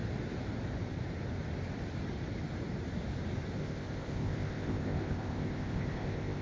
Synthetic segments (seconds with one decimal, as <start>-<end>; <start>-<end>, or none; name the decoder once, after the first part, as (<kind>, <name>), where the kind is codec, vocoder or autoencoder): 3.6-6.4 (codec, ZipCodec)